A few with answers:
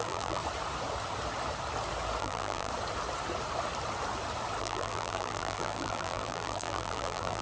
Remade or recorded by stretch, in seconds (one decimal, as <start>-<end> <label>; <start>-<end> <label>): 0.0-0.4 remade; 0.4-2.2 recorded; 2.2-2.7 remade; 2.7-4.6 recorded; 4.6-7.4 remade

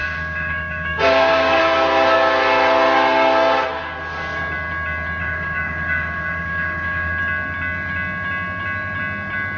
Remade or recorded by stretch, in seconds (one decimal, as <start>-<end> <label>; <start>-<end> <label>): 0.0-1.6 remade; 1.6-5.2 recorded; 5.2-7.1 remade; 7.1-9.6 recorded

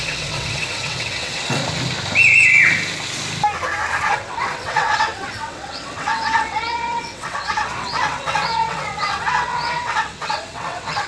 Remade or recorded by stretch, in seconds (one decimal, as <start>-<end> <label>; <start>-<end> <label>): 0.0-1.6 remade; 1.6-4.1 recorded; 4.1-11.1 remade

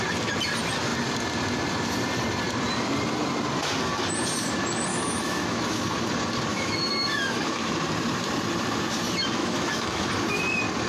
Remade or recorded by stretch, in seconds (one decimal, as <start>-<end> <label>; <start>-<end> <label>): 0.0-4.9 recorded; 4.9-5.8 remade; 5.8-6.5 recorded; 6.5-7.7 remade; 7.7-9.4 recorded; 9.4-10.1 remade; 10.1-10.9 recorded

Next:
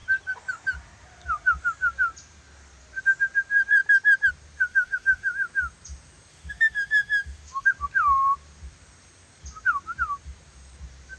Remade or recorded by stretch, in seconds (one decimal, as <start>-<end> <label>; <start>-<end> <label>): 0.0-4.7 recorded; 4.7-5.3 remade; 5.3-6.3 recorded; 6.3-7.7 remade; 7.7-11.2 recorded